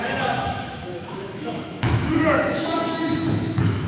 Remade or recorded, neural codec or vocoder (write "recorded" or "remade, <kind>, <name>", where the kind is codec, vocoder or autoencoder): remade, autoencoder, DAC-VAE